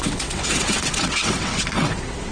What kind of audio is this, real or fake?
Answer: fake